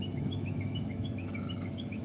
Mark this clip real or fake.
fake